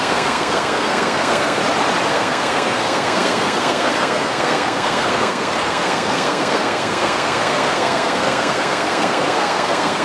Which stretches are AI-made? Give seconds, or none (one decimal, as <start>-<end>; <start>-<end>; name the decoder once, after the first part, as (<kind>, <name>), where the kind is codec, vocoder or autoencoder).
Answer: 0.0-1.6 (codec, SNAC); 2.1-10.0